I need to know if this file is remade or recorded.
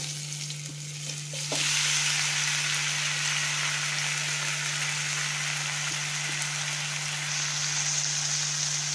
recorded